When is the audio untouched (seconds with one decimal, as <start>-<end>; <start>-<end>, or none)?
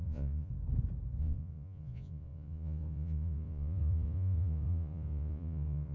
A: 0.5-1.2